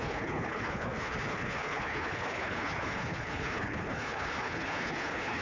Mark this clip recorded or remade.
remade